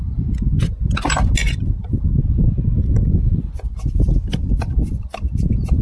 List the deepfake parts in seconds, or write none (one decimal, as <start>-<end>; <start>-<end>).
none